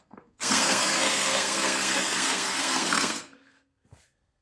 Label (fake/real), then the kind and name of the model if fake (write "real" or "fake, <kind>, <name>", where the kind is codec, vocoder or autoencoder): fake, codec, SNAC